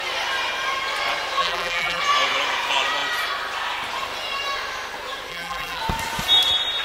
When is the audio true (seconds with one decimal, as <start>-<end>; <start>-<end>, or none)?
0.0-1.4; 2.0-5.3; 5.8-6.8